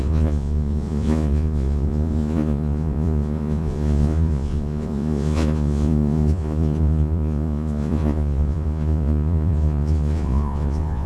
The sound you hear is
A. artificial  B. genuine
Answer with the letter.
A